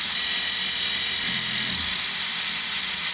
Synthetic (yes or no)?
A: no